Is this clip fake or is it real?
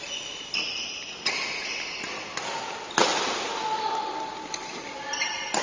real